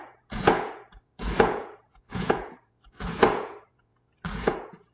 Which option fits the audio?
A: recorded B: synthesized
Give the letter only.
B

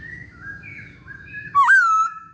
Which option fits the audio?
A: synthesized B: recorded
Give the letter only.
A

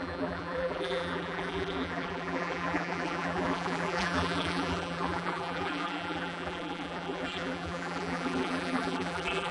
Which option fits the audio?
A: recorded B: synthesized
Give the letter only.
B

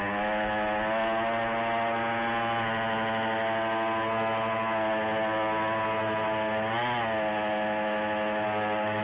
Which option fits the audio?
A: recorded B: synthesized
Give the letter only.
A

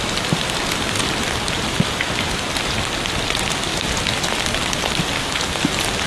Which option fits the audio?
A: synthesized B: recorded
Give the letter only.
B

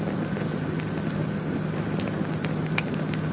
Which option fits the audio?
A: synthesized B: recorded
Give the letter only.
B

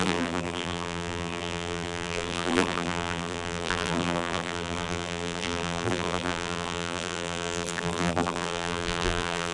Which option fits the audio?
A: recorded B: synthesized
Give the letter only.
B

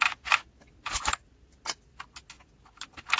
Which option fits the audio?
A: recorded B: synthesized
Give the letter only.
A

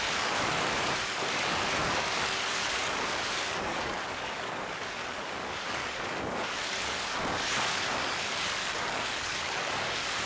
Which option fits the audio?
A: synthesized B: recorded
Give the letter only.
A